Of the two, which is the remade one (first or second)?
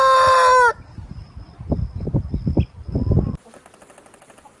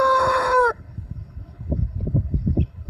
second